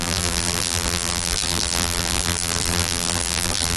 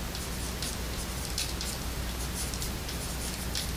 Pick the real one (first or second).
second